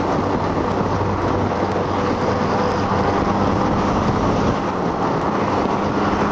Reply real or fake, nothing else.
real